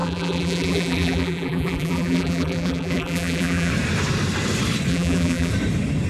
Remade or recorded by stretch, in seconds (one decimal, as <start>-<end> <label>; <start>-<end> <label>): 0.0-3.7 remade; 3.7-4.9 recorded; 4.9-5.5 remade; 5.5-6.1 recorded